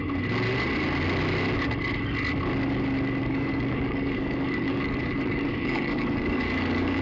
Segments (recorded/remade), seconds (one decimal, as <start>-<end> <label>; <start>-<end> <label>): 0.0-3.2 recorded; 3.2-7.0 remade